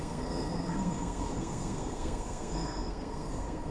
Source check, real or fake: fake